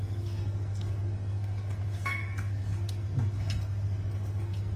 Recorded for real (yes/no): no